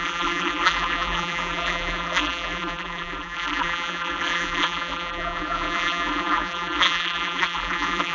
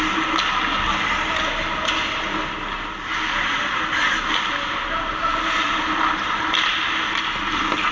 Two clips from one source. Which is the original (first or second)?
second